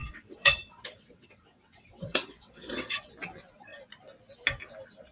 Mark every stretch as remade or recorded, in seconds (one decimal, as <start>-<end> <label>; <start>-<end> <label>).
0.0-3.1 remade; 3.1-5.1 recorded

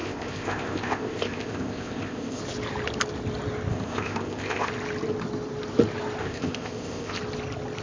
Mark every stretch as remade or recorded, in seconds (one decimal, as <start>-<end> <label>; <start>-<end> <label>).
0.0-2.4 remade; 2.4-3.7 recorded; 3.7-4.7 remade; 4.7-6.2 recorded; 6.2-7.2 remade; 7.2-7.8 recorded

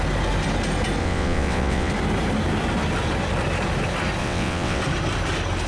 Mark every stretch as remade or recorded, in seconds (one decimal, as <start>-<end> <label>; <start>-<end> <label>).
0.0-1.0 recorded; 1.0-1.9 remade; 1.9-4.2 recorded; 4.2-4.8 remade; 4.8-5.7 recorded

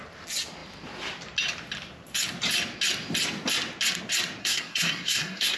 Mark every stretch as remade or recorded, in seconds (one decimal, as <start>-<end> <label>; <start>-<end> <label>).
0.0-4.4 recorded; 4.4-5.6 remade

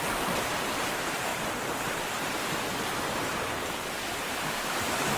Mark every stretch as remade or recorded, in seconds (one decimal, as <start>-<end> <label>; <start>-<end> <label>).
0.0-1.3 remade; 1.3-4.1 recorded; 4.1-5.2 remade

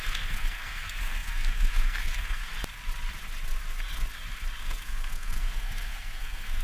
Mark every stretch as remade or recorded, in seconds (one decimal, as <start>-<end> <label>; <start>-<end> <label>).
0.0-2.5 remade; 2.5-4.6 recorded; 4.6-6.6 remade

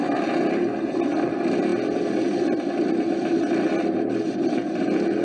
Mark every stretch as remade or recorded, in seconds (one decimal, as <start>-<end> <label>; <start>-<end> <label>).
0.0-5.2 recorded